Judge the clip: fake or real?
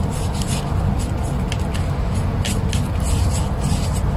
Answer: real